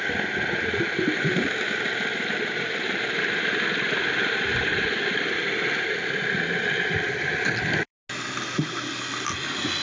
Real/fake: real